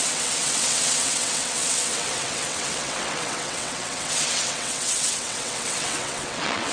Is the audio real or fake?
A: fake